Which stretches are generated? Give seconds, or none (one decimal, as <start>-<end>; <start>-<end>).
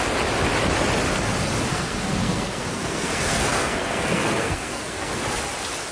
1.7-5.2